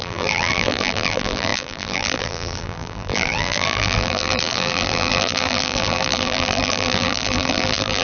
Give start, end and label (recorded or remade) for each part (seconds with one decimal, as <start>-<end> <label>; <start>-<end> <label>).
0.0-8.0 remade